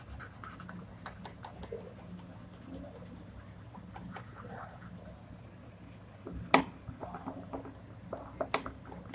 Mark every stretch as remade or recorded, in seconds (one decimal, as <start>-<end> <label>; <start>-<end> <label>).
0.0-9.1 recorded